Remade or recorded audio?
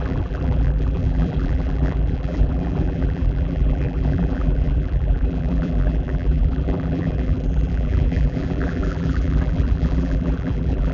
remade